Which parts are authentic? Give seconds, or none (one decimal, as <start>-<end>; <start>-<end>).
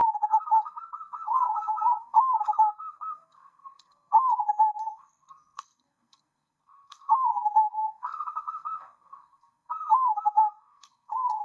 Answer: none